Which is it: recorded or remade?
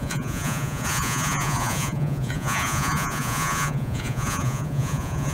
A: remade